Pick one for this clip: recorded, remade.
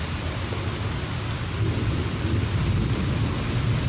recorded